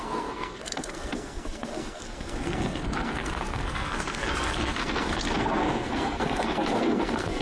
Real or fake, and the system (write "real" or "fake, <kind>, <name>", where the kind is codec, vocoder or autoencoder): fake, codec, SNAC